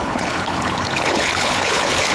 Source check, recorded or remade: remade